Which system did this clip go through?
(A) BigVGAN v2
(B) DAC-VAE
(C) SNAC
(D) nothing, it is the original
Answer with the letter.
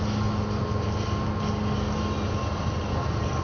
D